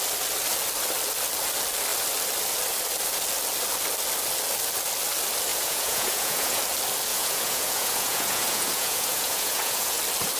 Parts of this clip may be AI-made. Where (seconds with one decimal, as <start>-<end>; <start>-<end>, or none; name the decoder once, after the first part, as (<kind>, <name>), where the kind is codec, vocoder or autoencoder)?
5.5-6.6 (vocoder, Vocos); 7.1-10.0